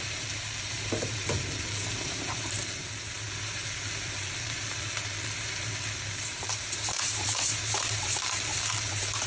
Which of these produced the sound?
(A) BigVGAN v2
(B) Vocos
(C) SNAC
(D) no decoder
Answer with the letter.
A